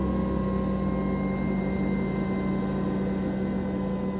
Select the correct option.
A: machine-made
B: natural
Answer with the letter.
B